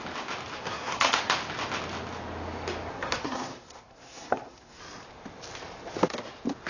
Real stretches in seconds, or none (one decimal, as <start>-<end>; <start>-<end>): 0.0-0.5; 1.2-2.9; 4.8-6.7